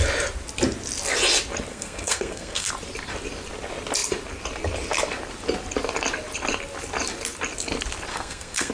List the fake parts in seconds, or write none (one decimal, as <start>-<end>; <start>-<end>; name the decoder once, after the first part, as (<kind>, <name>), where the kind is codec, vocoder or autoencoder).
1.7-2.7 (codec, SNAC); 8.1-8.7